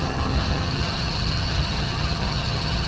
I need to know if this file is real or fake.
fake